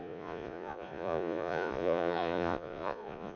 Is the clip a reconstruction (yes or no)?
yes